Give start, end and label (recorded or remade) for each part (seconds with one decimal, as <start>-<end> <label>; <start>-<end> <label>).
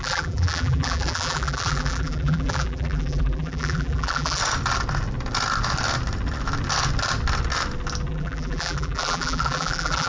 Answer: 0.0-4.4 remade; 4.4-8.1 recorded; 8.1-10.1 remade